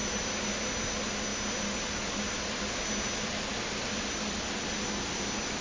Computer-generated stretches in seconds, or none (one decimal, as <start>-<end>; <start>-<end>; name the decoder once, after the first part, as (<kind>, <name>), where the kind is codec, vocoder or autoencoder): none